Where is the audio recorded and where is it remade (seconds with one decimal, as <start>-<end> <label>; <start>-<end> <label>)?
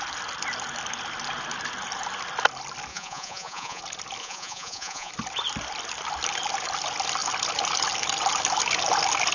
0.0-2.9 recorded; 2.9-3.8 remade; 3.8-4.2 recorded; 4.2-5.1 remade; 5.1-9.3 recorded